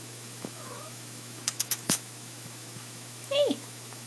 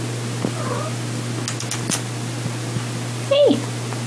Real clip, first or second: second